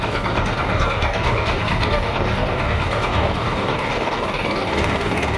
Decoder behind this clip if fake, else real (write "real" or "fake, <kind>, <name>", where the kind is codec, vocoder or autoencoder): fake, codec, DAC